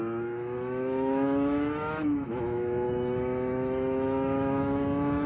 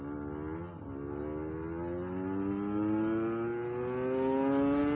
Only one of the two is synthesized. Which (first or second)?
first